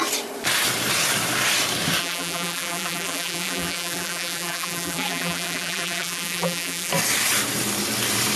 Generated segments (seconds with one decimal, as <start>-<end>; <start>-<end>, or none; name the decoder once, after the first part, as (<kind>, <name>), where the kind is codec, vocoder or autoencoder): 2.0-6.9 (vocoder, BigVGAN v2)